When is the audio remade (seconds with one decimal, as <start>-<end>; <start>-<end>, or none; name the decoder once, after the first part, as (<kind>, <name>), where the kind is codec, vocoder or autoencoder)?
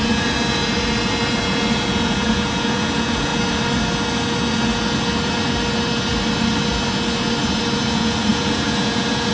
0.0-3.3 (vocoder, Vocos); 7.9-9.3